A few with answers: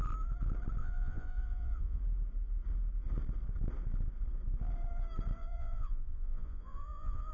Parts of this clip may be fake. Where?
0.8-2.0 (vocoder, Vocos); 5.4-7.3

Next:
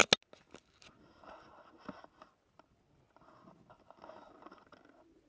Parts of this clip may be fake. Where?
none

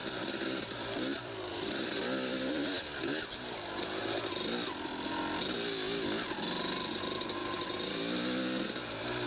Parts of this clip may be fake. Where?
0.0-3.0 (vocoder, BigVGAN v2)

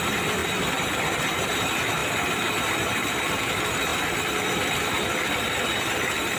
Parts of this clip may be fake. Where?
none

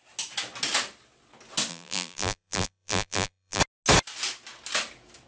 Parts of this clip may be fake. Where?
1.7-3.6 (vocoder, BigVGAN v2)

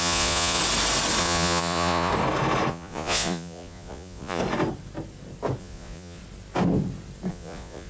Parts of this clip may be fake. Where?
0.0-0.6 (vocoder, Vocos); 1.2-2.1; 2.7-4.4; 5.6-6.2; 7.3-7.9